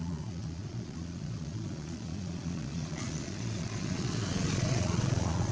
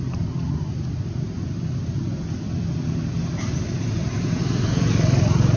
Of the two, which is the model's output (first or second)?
first